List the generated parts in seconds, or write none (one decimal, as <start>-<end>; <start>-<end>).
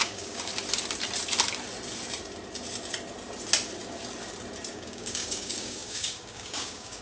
0.0-0.5; 4.7-7.0